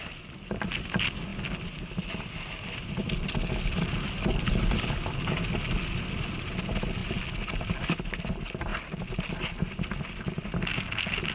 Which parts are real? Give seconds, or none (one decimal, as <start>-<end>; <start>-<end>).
0.0-11.3